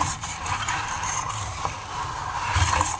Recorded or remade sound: remade